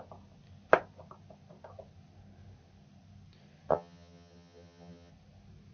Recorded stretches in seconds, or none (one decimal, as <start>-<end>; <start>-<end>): 0.0-3.7; 5.1-5.7